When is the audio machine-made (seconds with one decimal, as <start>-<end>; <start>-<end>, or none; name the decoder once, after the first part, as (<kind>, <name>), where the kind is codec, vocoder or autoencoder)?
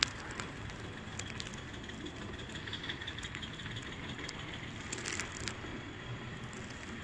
5.7-6.3 (vocoder, Vocos)